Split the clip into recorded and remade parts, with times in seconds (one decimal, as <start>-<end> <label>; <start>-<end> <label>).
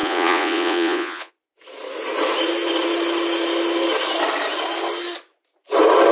0.0-1.3 remade; 1.3-6.1 recorded